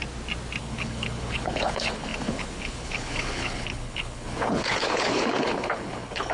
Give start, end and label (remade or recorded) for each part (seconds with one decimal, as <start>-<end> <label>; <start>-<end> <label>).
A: 0.0-0.6 recorded; 0.6-6.3 remade